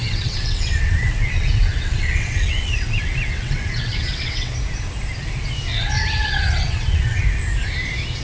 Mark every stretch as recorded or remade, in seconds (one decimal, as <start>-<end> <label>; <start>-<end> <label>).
0.0-4.5 remade; 4.5-5.7 recorded; 5.7-7.2 remade; 7.2-8.2 recorded